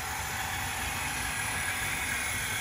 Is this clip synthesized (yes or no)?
no